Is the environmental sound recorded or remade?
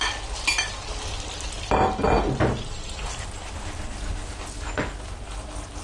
recorded